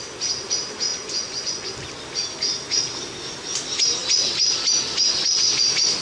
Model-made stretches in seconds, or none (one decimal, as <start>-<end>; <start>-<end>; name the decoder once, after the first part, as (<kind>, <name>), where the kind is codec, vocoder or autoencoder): 0.9-1.7 (vocoder, Vocos)